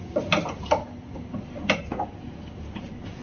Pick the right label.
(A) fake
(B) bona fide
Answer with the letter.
B